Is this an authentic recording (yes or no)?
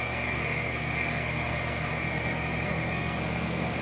no